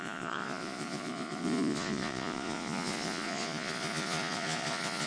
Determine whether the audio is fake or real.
fake